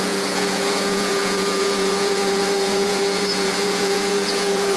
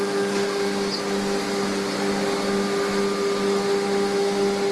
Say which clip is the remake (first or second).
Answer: first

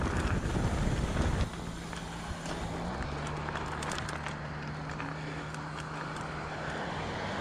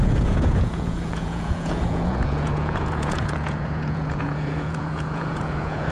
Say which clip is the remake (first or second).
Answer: second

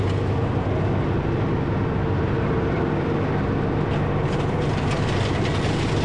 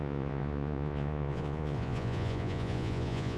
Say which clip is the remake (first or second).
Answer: second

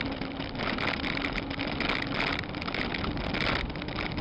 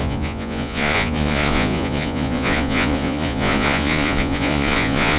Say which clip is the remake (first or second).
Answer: second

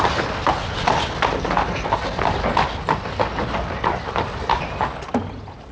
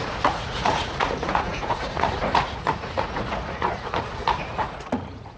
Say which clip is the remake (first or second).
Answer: second